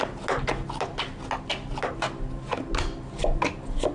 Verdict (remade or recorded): recorded